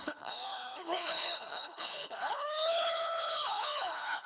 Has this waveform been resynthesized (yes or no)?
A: yes